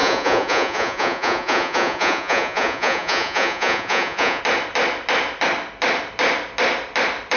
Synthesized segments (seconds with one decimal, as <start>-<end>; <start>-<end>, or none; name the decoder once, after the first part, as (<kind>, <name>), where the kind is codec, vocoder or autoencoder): 0.0-4.4 (vocoder, Vocos)